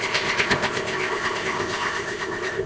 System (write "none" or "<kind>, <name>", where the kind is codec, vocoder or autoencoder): codec, ZipCodec